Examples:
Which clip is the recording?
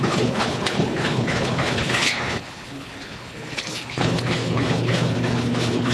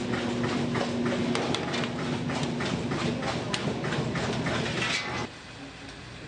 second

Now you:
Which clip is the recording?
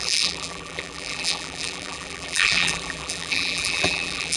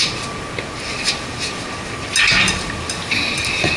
second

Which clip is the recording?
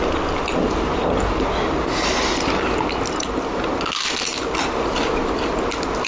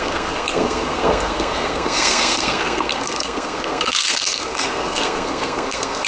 first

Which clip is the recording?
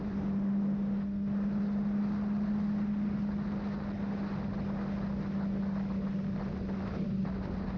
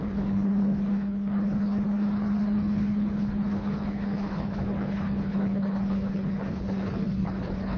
first